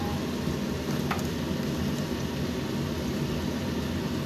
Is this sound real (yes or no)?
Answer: yes